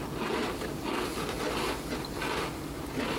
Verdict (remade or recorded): recorded